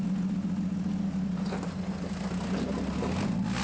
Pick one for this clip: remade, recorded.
recorded